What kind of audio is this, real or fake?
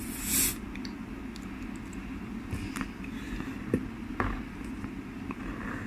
real